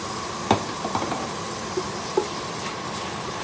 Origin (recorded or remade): recorded